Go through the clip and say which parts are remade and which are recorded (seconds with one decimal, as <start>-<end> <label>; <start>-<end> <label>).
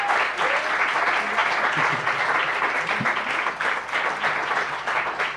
0.0-5.4 recorded